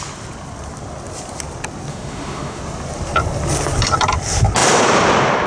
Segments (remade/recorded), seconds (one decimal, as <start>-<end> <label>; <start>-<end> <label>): 0.0-1.9 recorded; 1.9-2.6 remade; 2.6-5.5 recorded